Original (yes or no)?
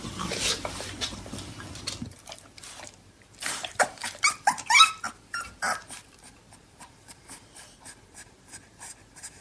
no